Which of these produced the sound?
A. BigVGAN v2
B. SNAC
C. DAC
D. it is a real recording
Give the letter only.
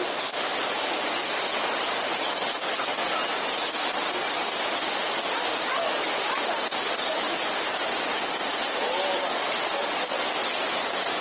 D